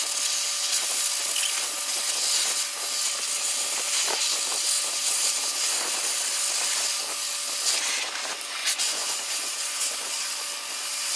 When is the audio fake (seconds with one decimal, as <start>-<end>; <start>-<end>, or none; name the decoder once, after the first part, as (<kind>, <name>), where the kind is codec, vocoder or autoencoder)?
8.6-10.1 (vocoder, Vocos)